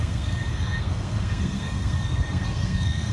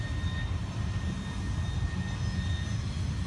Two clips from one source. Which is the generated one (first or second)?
first